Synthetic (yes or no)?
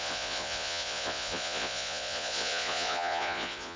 yes